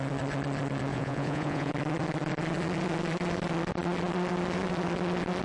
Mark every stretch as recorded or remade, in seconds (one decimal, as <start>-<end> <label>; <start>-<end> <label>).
0.0-0.9 recorded; 0.9-1.7 remade; 1.7-5.4 recorded